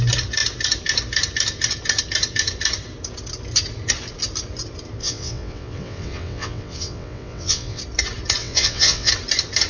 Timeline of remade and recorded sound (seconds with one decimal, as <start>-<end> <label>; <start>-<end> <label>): 0.0-5.0 recorded; 5.0-7.8 remade; 7.8-8.4 recorded; 8.4-9.1 remade; 9.1-9.7 recorded